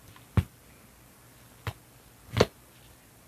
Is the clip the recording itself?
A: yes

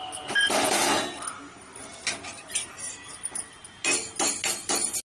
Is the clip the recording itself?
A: yes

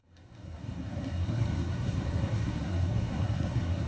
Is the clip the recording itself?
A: no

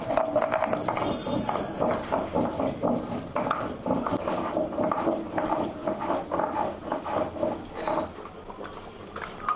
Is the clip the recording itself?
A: yes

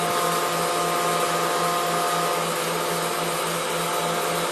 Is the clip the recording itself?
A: yes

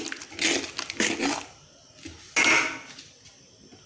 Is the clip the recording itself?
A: yes